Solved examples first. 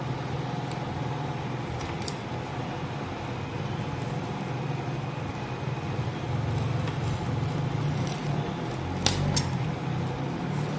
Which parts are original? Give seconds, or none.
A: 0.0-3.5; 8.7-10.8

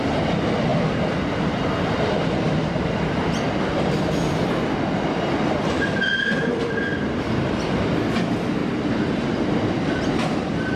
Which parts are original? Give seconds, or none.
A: 0.7-5.3; 8.6-9.5

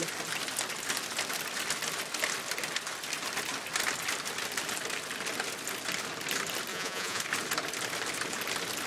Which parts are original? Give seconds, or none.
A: 0.0-6.7; 7.2-8.9